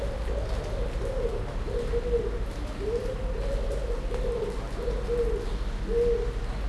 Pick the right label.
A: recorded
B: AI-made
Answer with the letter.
A